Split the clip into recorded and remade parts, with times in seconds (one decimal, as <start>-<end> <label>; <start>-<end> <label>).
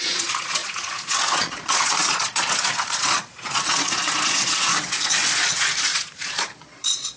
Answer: 0.0-7.2 remade